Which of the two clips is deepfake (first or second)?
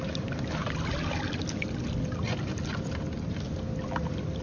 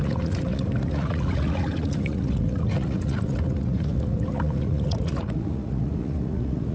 second